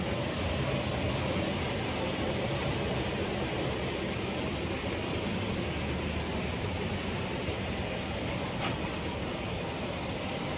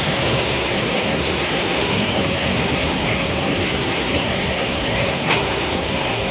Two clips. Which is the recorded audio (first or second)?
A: first